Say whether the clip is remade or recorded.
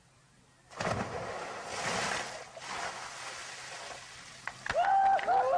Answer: recorded